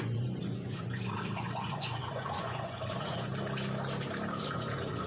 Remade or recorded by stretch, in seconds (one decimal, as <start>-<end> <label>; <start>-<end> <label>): 0.0-3.3 remade; 3.3-4.4 recorded; 4.4-5.1 remade